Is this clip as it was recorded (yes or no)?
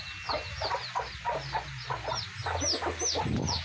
yes